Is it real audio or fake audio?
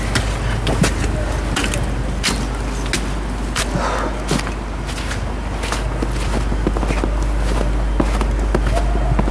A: real